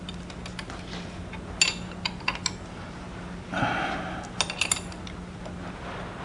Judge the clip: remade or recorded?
recorded